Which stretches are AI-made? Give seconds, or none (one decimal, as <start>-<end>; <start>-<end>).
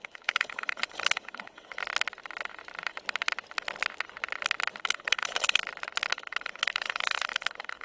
0.0-1.8; 4.8-5.6; 6.1-7.8